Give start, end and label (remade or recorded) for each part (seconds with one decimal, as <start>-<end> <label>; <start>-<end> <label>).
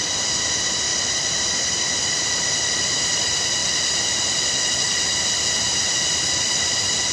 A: 0.0-7.1 remade